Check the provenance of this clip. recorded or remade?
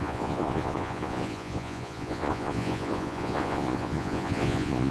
remade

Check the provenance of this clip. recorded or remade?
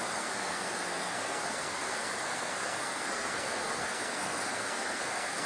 remade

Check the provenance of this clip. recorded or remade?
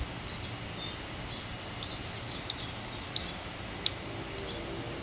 recorded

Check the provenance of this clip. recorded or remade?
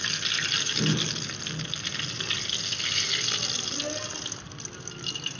recorded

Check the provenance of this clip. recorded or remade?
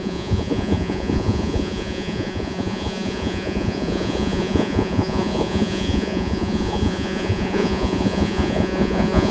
remade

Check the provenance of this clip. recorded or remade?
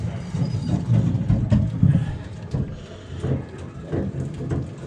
recorded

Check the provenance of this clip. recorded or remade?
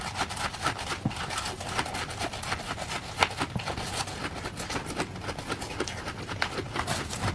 recorded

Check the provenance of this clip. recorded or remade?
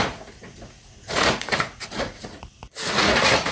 remade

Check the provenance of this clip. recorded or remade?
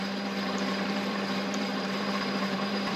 remade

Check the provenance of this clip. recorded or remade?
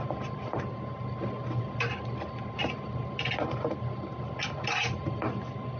recorded